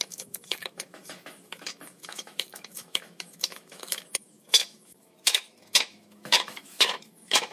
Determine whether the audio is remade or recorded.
remade